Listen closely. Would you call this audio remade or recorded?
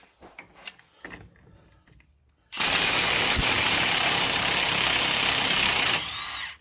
recorded